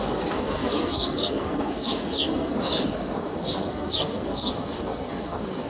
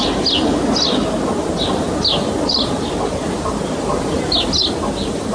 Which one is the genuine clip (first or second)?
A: second